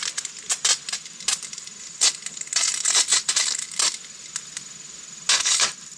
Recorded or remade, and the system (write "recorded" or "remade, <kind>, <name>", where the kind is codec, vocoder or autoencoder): recorded